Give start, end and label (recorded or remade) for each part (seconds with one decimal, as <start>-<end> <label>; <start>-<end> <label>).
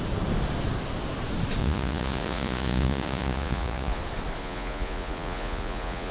0.0-1.6 recorded; 1.6-4.0 remade; 4.0-4.4 recorded; 4.4-6.1 remade